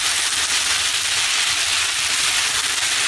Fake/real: real